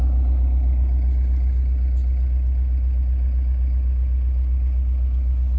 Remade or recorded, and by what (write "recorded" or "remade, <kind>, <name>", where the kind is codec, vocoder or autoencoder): recorded